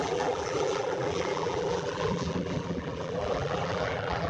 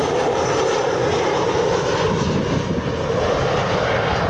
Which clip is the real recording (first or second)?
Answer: second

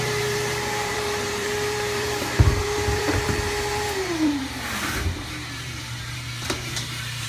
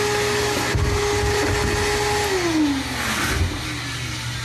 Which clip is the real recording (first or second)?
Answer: second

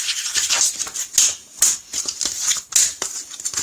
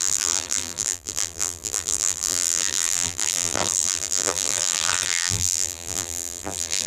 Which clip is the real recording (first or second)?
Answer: first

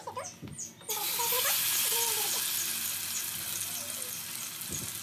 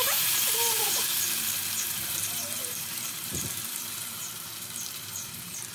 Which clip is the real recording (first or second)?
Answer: first